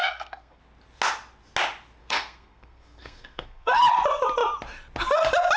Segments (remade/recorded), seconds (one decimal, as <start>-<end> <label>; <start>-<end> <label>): 0.0-0.6 remade; 0.6-2.0 recorded; 2.0-3.8 remade; 3.8-5.6 recorded